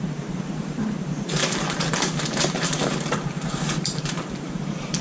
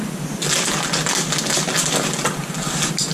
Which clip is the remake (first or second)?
first